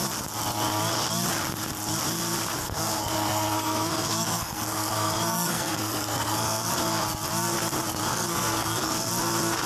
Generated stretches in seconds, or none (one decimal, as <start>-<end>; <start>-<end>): 2.6-6.7; 8.1-9.1